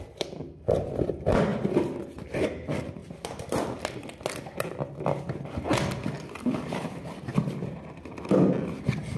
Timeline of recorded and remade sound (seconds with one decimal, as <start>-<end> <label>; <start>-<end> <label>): 0.0-1.5 remade; 1.5-2.0 recorded; 2.0-3.0 remade; 3.0-6.3 recorded; 6.3-9.2 remade